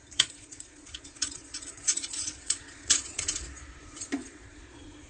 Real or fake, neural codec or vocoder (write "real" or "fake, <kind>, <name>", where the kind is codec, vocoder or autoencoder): fake, vocoder, Vocos